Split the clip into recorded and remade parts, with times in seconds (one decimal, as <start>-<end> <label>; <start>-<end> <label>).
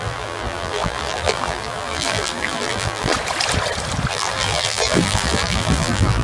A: 0.0-3.1 remade; 3.1-4.1 recorded; 4.1-6.2 remade